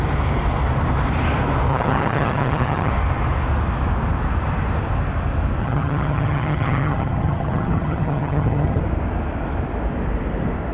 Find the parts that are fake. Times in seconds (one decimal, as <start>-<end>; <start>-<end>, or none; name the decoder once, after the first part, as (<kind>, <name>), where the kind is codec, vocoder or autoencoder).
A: 1.7-2.9 (vocoder, HiFi-GAN); 5.6-8.8